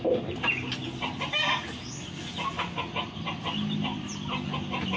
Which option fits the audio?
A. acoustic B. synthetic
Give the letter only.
A